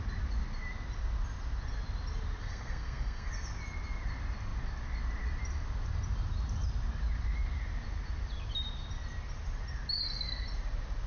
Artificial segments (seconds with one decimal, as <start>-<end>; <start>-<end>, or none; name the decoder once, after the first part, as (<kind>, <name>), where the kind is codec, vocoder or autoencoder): 2.4-3.3 (codec, SNAC)